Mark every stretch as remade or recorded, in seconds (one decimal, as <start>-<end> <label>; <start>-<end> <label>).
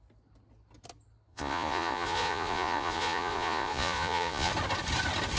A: 0.0-1.3 recorded; 1.3-4.5 remade; 4.5-5.4 recorded